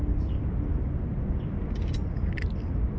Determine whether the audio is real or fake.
real